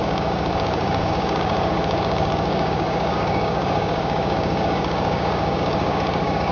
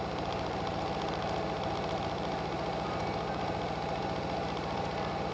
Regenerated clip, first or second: first